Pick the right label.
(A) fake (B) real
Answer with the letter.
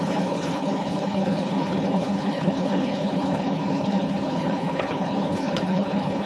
A